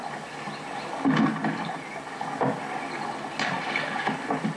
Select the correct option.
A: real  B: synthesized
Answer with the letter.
A